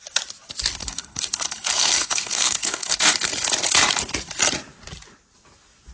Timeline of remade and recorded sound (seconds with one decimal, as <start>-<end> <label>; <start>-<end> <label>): 0.0-0.8 recorded; 0.8-3.1 remade; 3.1-5.9 recorded